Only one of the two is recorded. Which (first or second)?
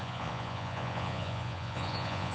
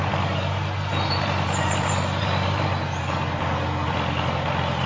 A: second